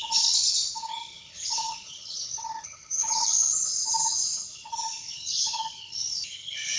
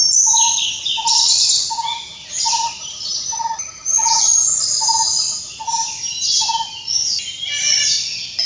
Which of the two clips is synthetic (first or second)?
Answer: first